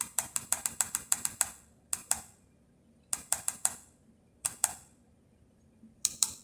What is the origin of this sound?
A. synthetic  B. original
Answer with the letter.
A